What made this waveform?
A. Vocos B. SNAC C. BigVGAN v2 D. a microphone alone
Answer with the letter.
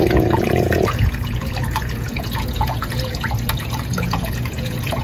A